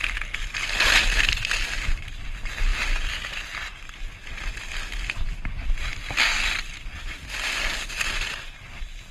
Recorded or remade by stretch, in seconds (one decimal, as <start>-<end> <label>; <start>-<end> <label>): 0.0-5.9 recorded; 5.9-8.0 remade; 8.0-9.1 recorded